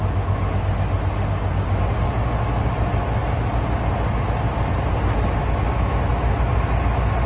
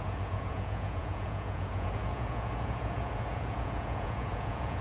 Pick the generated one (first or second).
second